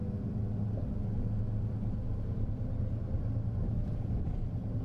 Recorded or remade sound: recorded